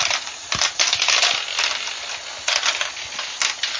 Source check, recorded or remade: recorded